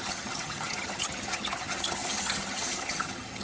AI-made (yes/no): yes